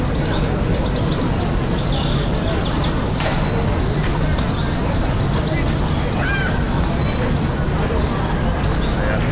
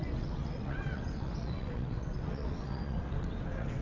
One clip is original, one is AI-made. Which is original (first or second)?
first